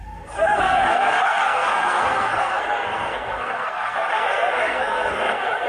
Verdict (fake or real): fake